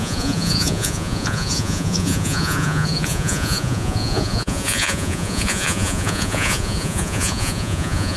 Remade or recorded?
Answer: remade